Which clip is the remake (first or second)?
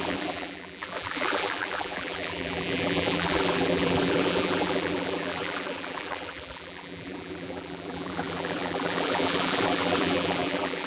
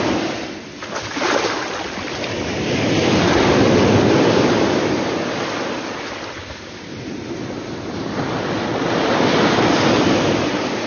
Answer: first